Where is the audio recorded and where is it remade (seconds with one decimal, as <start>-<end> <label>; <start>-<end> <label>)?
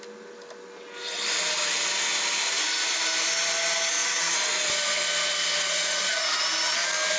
0.0-5.7 recorded; 5.7-6.2 remade; 6.2-7.2 recorded